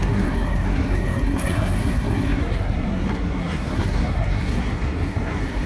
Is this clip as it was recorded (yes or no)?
no